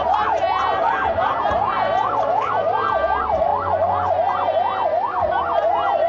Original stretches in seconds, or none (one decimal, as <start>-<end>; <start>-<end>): 0.0-6.1